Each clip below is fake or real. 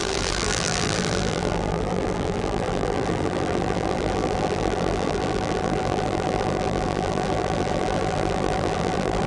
fake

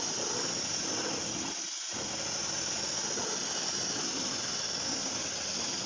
real